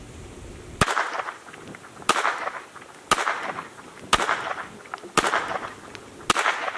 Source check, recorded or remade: recorded